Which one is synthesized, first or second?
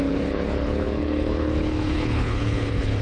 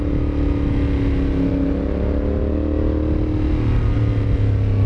first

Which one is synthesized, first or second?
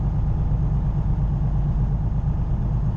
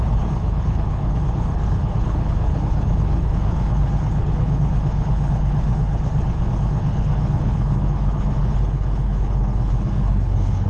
second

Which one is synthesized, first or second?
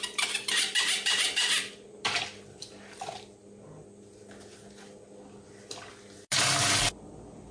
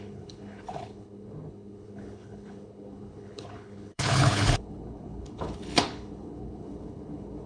second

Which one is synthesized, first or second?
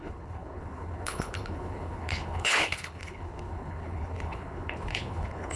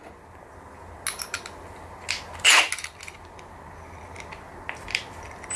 first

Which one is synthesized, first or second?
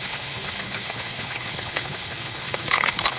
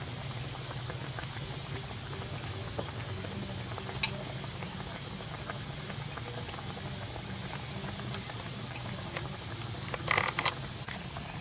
first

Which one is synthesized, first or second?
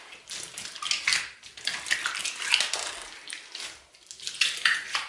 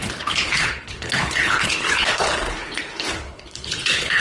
second